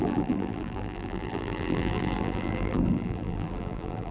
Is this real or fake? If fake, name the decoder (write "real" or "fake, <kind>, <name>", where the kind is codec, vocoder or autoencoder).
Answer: fake, vocoder, BigVGAN v2